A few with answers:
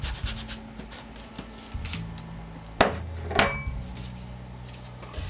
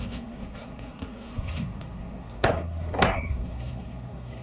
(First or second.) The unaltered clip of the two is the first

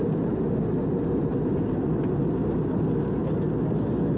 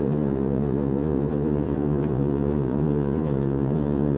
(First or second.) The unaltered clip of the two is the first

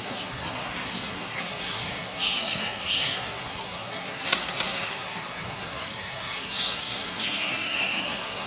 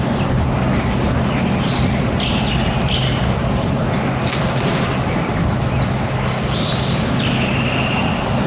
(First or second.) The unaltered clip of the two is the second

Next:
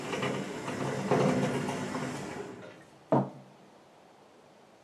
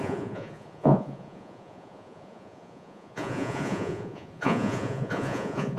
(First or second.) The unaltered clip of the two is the first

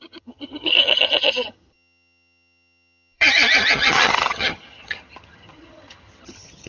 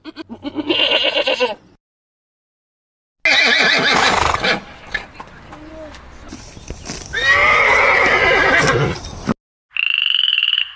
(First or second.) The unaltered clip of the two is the second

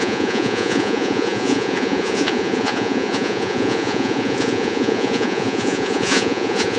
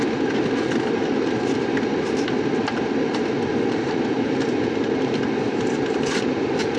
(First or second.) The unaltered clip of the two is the second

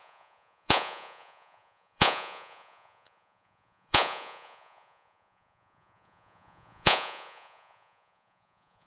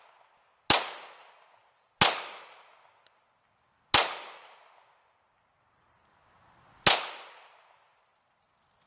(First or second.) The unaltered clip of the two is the second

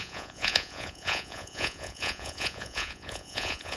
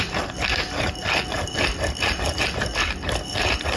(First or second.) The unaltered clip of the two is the second